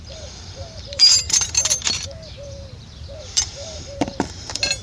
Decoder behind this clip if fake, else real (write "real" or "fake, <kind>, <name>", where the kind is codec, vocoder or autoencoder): fake, vocoder, BigVGAN v2